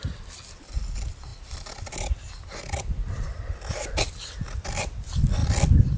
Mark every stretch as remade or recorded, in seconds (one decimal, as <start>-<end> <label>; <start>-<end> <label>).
0.0-6.0 recorded